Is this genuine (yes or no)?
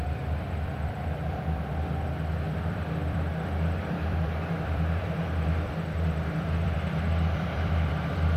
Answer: no